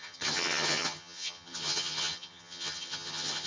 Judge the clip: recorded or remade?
remade